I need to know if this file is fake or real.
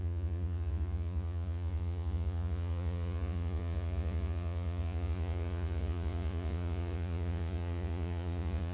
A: fake